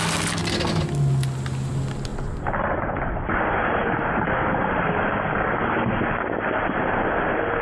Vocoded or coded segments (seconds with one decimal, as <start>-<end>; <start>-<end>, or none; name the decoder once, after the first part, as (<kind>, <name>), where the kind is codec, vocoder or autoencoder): none